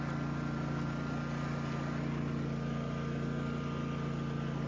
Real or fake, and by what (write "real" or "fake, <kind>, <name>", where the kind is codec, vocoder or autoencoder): real